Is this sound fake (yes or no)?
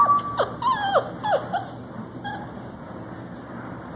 no